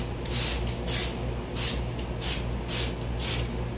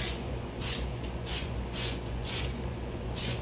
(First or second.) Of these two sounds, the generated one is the second